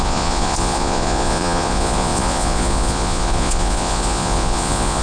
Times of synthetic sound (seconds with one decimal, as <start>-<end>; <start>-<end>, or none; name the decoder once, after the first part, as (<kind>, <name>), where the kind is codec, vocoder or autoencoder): 0.0-5.0 (vocoder, Vocos)